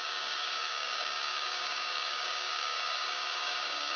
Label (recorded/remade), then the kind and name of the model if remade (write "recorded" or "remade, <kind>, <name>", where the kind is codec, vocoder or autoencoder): remade, codec, DAC